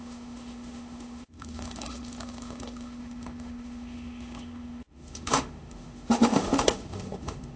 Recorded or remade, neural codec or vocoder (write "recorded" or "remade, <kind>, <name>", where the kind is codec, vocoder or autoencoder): remade, autoencoder, DAC-VAE